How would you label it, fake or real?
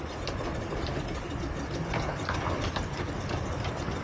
real